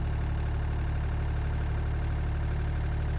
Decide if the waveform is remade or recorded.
recorded